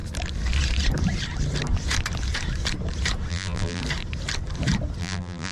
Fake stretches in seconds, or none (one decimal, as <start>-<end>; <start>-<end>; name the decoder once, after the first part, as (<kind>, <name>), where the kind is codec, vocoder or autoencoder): 3.3-3.8 (vocoder, BigVGAN v2); 5.0-5.5